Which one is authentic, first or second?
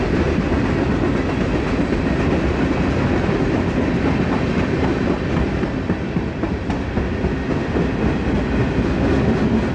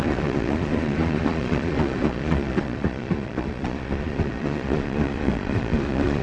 first